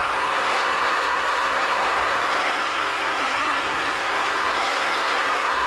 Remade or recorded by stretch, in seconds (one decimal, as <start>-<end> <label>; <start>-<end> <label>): 0.0-5.7 remade